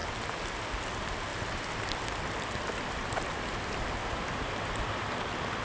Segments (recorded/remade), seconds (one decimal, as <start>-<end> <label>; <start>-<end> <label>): 0.0-0.6 recorded; 0.6-1.3 remade; 1.3-1.8 recorded; 1.8-5.6 remade